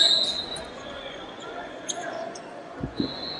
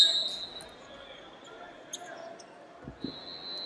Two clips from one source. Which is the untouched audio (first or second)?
second